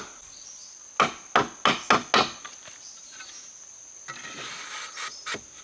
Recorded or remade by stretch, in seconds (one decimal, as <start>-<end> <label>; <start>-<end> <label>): 0.0-5.6 recorded